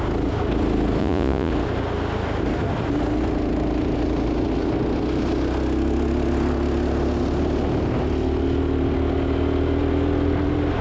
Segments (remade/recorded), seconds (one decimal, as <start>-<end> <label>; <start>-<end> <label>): 0.0-1.0 recorded; 1.0-1.5 remade; 1.5-10.8 recorded